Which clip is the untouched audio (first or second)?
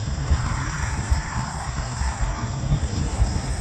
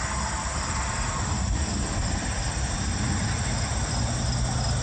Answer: second